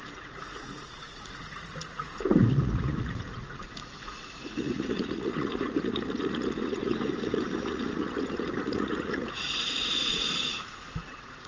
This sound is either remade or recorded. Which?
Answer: remade